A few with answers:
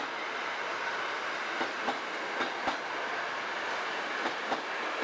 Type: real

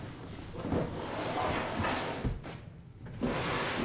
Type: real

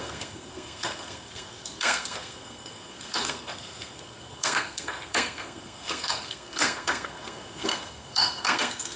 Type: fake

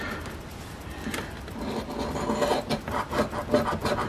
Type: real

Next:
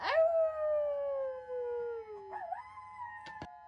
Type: real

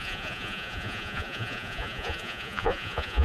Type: fake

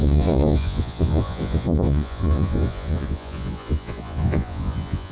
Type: fake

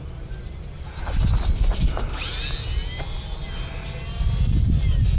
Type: real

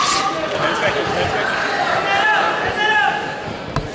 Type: real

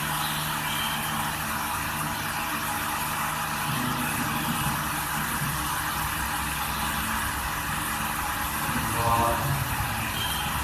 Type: real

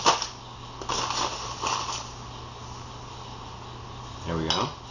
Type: real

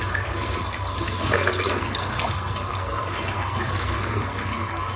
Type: fake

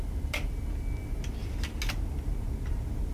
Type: real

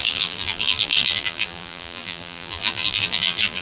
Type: fake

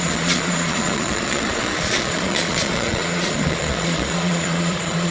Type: fake